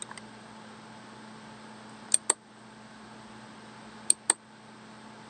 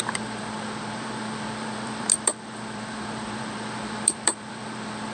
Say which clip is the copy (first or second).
second